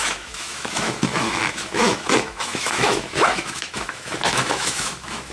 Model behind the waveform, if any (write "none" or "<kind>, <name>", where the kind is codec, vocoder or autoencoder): autoencoder, DAC-VAE